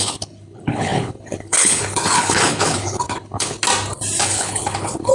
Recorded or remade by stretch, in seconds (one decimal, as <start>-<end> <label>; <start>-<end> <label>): 0.0-3.6 remade; 3.6-4.2 recorded; 4.2-5.1 remade